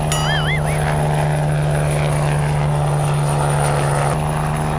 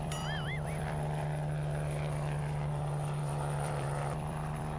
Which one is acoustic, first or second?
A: first